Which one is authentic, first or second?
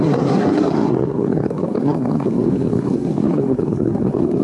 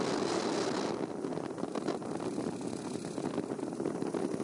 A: second